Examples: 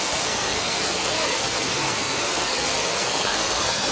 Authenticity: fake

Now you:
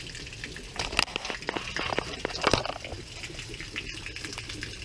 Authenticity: real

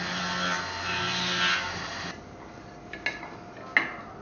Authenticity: real